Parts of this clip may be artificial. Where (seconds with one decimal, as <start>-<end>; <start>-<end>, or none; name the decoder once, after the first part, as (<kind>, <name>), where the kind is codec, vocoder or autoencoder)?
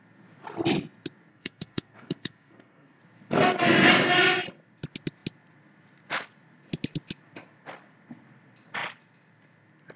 1.3-3.0 (codec, SNAC)